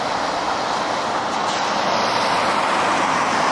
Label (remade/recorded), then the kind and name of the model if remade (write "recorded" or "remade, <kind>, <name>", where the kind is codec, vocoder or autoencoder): recorded